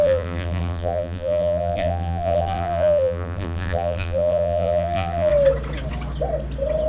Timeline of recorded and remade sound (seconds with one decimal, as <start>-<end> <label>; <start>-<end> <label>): 0.0-5.3 remade; 5.3-6.9 recorded